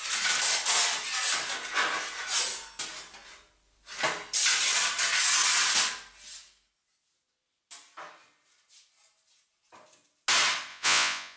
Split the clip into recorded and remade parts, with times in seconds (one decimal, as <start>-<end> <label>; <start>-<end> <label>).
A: 0.0-10.7 recorded; 10.7-11.4 remade